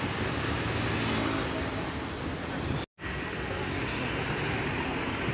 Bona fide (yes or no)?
yes